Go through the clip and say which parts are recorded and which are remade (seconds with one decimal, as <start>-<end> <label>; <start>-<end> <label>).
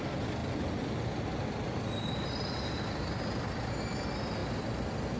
0.0-5.2 recorded